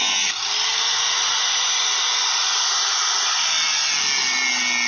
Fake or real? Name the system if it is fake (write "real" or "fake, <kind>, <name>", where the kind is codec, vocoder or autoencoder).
real